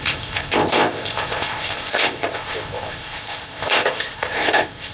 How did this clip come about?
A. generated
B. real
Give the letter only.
A